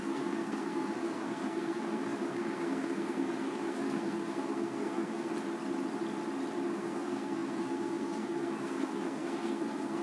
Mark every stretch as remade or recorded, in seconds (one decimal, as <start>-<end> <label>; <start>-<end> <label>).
0.0-5.3 remade; 5.3-6.7 recorded; 6.7-10.0 remade